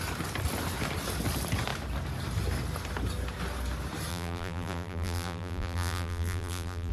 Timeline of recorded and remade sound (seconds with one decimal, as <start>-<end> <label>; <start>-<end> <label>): 0.0-4.1 recorded; 4.1-6.9 remade